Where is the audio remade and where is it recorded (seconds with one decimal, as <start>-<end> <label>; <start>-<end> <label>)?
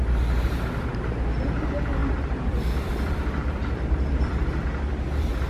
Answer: 0.0-2.0 recorded; 2.0-3.2 remade; 3.2-3.6 recorded; 3.6-4.6 remade; 4.6-5.5 recorded